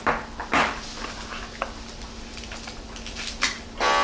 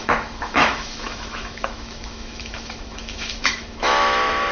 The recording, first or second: first